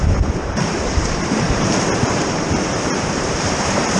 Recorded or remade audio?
remade